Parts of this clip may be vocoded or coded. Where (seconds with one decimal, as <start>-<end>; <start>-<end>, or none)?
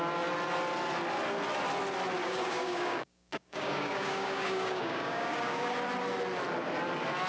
2.2-5.7